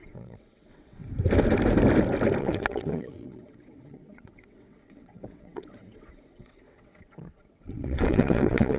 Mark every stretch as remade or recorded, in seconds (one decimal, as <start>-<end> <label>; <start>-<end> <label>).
0.0-1.0 remade; 1.0-2.4 recorded; 2.4-8.8 remade